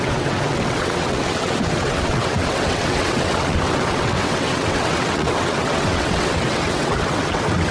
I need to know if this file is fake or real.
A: fake